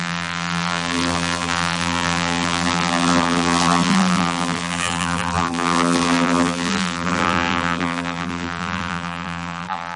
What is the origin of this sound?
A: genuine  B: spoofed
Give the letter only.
B